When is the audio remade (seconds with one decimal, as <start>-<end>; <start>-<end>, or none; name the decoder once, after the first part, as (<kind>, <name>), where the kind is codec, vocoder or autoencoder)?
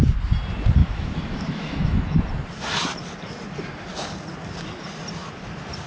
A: 0.8-2.2 (autoencoder, DAC-VAE)